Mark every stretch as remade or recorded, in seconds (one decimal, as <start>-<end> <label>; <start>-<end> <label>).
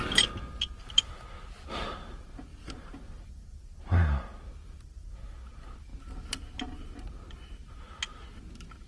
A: 0.0-2.5 recorded; 2.5-3.2 remade; 3.2-8.9 recorded